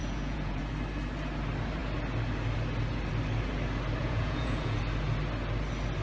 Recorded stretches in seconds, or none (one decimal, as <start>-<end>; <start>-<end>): 0.6-4.0; 4.8-6.0